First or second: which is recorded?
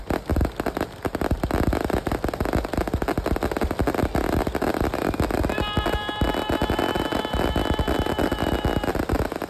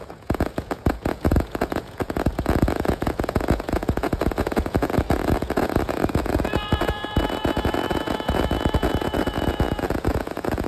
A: first